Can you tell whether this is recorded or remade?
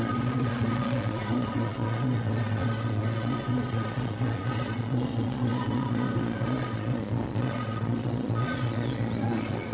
remade